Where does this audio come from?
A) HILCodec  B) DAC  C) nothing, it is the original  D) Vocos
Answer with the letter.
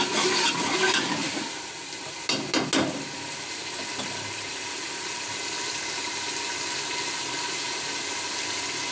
C